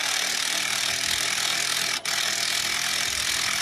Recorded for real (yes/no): yes